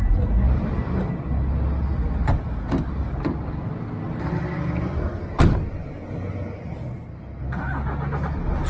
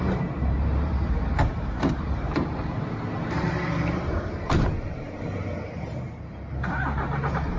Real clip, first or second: first